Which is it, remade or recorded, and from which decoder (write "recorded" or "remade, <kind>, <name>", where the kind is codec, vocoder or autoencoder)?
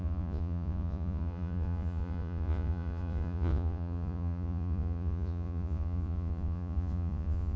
remade, vocoder, Vocos